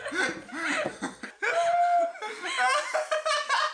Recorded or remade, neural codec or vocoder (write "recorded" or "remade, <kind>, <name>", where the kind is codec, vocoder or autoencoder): recorded